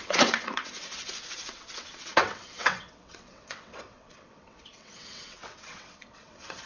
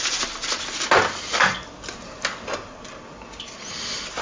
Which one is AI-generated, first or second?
first